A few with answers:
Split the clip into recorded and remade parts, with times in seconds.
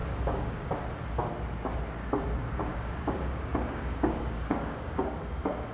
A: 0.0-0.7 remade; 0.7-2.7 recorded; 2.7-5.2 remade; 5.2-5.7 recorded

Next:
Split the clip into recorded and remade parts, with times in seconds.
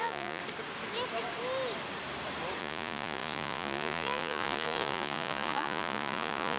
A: 0.0-0.4 remade; 0.4-2.6 recorded; 2.6-6.6 remade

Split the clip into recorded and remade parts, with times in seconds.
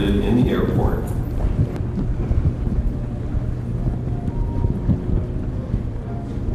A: 0.0-3.9 recorded; 3.9-6.5 remade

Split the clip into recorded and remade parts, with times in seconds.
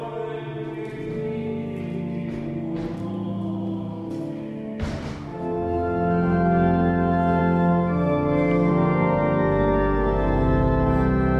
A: 0.0-11.4 recorded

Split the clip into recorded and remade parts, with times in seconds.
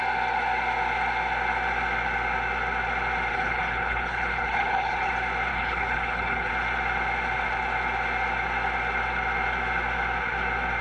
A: 0.0-3.3 recorded; 3.3-5.1 remade; 5.1-5.5 recorded; 5.5-6.5 remade; 6.5-10.8 recorded